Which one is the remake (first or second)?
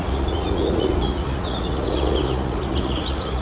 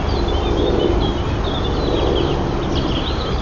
first